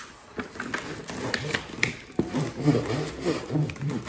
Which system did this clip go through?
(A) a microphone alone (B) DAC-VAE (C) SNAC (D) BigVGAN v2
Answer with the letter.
A